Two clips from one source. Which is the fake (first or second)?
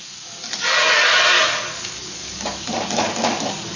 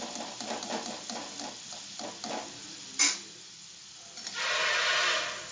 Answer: first